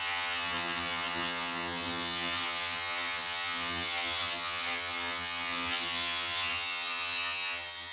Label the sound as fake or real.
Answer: fake